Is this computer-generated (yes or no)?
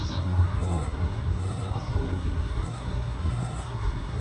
yes